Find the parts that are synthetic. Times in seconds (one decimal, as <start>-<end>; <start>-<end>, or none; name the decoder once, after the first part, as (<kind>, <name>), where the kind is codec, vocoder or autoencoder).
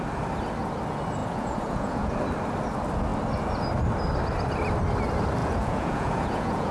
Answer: 1.2-2.2 (vocoder, Vocos); 5.4-6.7